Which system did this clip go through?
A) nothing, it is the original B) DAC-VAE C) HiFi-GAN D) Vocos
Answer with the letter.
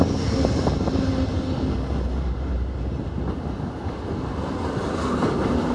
A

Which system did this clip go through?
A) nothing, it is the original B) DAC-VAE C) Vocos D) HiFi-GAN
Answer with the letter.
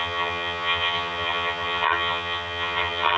D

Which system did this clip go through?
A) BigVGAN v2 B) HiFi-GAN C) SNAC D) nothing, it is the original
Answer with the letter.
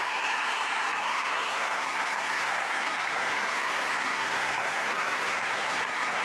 C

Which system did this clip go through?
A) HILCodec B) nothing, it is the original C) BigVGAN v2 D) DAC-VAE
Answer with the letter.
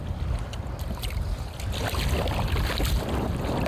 B